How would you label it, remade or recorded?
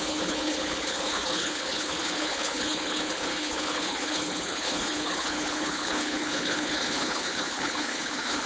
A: remade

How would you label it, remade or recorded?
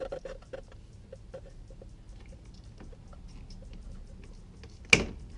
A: recorded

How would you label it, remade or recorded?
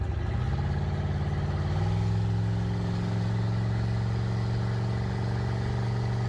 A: recorded